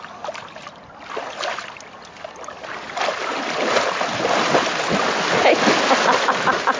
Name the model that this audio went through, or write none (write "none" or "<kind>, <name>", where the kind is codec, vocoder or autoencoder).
none